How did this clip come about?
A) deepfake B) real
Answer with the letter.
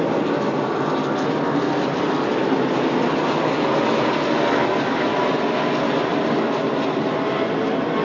B